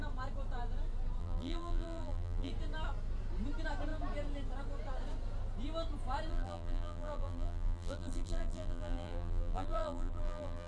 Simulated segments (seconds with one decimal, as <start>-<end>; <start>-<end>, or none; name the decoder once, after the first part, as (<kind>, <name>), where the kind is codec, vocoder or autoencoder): 1.2-2.5 (vocoder, BigVGAN v2); 6.3-10.7